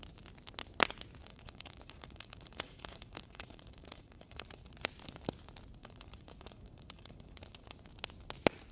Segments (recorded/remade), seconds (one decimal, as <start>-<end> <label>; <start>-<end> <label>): 0.0-1.3 recorded; 1.3-4.8 remade; 4.8-5.8 recorded; 5.8-7.9 remade; 7.9-8.7 recorded